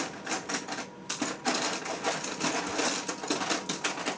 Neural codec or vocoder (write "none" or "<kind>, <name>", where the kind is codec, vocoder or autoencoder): none